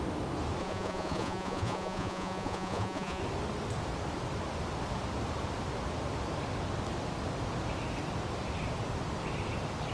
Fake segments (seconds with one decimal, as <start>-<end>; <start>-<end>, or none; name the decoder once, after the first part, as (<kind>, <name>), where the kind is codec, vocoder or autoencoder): 0.6-3.2 (vocoder, Vocos)